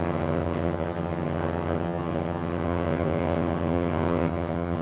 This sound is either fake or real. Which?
fake